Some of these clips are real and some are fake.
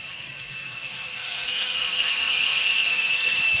fake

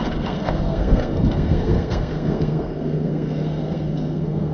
fake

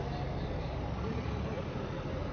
real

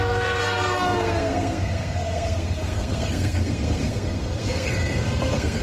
fake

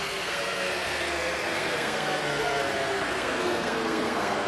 fake